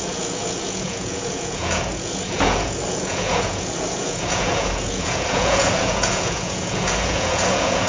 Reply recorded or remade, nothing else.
remade